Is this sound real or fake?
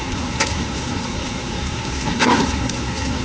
fake